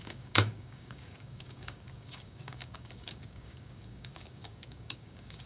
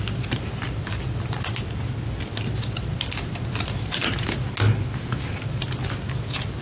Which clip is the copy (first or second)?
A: first